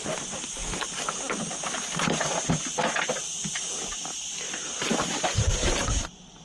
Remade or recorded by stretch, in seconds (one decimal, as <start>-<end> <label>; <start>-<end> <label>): 0.0-5.4 recorded; 5.4-6.4 remade